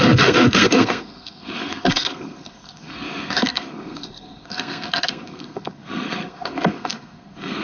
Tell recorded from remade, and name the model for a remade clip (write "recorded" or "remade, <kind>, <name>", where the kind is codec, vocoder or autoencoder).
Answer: remade, codec, SNAC